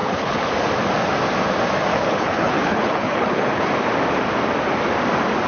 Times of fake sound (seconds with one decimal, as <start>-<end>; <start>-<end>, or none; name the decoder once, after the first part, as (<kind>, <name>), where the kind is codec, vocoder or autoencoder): 0.0-0.5 (codec, HILCodec); 1.9-3.7